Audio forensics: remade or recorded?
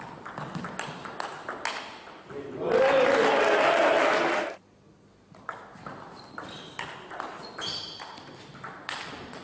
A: recorded